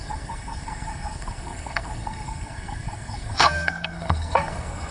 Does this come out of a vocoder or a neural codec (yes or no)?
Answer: yes